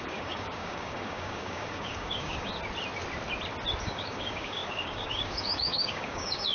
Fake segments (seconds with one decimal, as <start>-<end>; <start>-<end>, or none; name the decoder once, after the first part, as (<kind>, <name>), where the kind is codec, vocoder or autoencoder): 0.0-2.5 (codec, DAC); 3.8-6.5